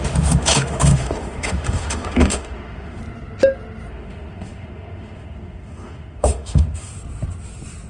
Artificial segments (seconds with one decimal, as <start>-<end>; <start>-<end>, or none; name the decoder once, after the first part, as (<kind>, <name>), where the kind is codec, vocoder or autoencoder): 0.0-3.0 (autoencoder, DAC-VAE); 3.9-6.9